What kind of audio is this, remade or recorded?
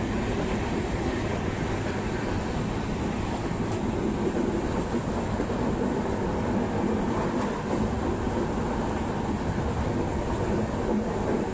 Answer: recorded